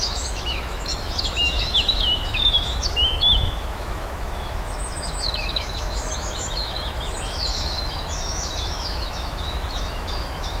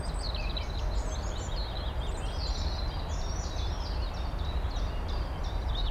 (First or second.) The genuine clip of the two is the second